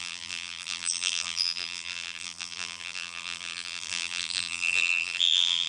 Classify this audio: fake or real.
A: fake